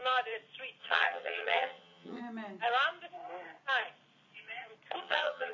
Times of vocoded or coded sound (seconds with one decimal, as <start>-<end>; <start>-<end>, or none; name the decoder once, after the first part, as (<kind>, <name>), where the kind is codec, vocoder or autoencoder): 0.8-2.2 (vocoder, HiFi-GAN); 5.0-5.5